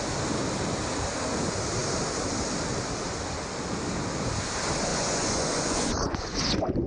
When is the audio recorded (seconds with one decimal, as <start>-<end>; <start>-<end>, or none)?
0.0-4.9